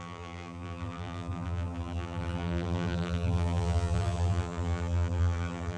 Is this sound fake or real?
fake